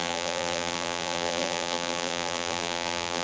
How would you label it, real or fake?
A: fake